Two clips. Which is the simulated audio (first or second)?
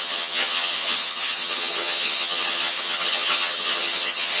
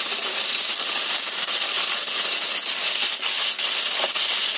first